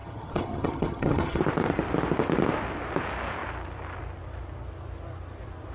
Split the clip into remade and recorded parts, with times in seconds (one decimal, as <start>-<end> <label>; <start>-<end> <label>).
0.0-1.4 remade; 1.4-5.7 recorded

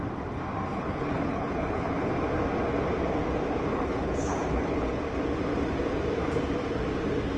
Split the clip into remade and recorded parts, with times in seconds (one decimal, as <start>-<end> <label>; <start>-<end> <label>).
0.0-0.7 recorded; 0.7-2.1 remade; 2.1-3.7 recorded; 3.7-5.0 remade; 5.0-7.4 recorded

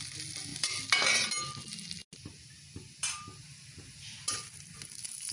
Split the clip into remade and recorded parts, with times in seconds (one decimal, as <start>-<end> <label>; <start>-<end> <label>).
0.0-5.3 recorded

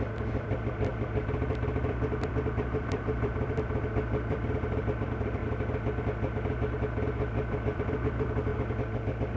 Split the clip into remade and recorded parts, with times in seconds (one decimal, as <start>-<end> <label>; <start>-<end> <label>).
0.0-5.4 remade; 5.4-7.2 recorded; 7.2-8.5 remade; 8.5-9.4 recorded

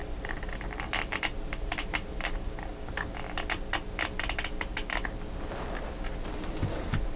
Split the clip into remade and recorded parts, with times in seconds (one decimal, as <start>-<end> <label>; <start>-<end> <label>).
0.0-2.7 remade; 2.7-7.2 recorded